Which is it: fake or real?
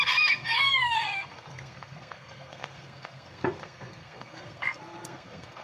fake